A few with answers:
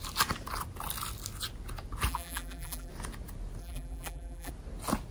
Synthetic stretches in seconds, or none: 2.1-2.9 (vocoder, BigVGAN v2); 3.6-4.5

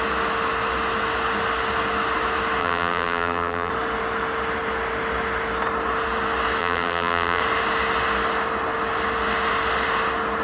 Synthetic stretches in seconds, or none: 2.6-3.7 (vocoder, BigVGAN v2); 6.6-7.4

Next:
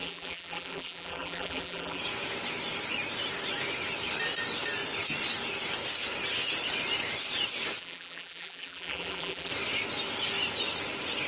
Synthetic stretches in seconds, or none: 0.0-2.0 (vocoder, BigVGAN v2); 7.8-9.5

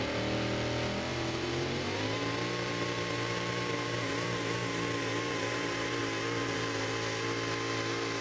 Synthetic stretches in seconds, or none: 1.1-6.0 (vocoder, BigVGAN v2); 6.4-6.9

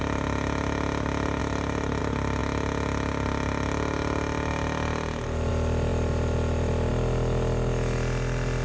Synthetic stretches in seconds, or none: 1.4-2.0 (vocoder, BigVGAN v2)